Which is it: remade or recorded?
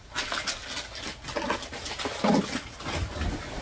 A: recorded